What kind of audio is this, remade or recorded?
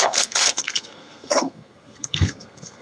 remade